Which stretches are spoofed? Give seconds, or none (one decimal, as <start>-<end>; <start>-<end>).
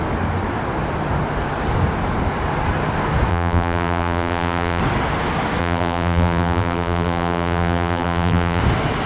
3.3-4.8; 5.6-8.6